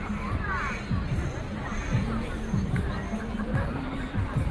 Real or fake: real